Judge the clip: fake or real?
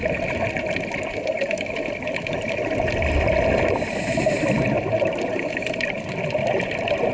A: real